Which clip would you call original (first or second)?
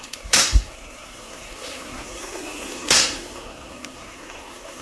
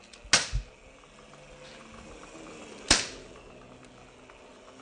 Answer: second